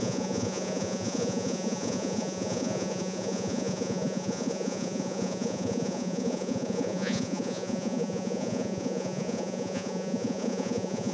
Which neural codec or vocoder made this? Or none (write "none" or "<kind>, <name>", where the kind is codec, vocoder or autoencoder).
vocoder, Vocos